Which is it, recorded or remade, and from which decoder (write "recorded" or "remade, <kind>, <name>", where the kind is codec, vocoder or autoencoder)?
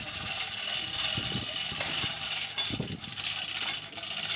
recorded